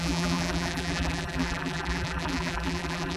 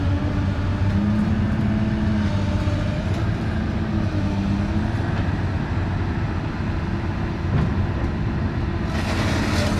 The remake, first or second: first